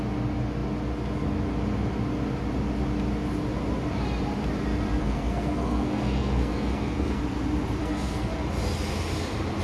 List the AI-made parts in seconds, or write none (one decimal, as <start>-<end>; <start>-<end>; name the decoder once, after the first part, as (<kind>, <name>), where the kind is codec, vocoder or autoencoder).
5.0-7.2 (codec, SNAC); 7.8-8.3

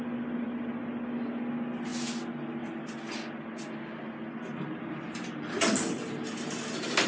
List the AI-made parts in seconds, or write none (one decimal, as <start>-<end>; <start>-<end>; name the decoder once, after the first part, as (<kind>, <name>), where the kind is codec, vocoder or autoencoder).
none

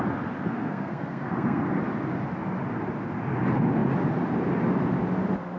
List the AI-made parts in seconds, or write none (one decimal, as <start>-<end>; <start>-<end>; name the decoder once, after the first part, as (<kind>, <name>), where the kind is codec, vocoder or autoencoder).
0.5-1.6 (codec, SNAC)

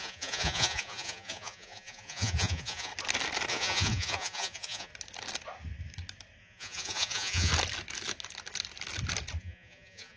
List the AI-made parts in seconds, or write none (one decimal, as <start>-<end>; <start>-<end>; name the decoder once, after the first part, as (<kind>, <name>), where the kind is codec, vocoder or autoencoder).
0.0-2.9 (vocoder, Vocos); 3.5-4.9; 6.4-7.5; 9.4-10.2

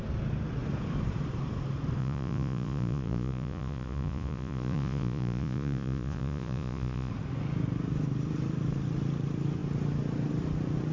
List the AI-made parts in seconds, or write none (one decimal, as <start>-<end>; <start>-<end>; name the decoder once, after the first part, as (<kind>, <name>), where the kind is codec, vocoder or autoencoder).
2.0-7.1 (vocoder, Vocos)